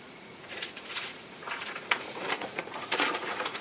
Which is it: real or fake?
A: fake